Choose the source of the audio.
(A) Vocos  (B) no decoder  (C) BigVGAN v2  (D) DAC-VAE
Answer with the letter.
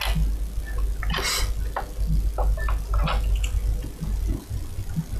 B